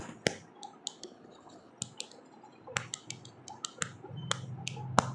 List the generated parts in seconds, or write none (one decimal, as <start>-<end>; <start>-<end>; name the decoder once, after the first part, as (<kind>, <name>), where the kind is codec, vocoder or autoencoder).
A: 1.0-1.7 (codec, HILCodec)

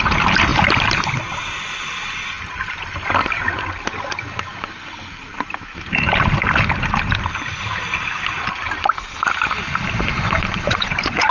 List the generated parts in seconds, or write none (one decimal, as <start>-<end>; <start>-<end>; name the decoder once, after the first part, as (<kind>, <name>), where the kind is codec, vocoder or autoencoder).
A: 10.1-11.3 (vocoder, Vocos)